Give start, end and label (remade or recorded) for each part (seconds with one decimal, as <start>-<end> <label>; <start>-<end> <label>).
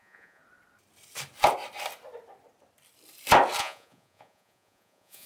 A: 0.0-0.4 remade; 0.4-3.6 recorded; 3.6-5.3 remade